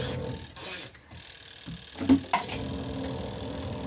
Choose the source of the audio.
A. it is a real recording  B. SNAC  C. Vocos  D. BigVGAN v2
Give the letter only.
A